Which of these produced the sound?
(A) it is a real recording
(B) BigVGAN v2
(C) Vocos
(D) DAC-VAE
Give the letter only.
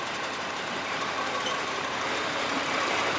B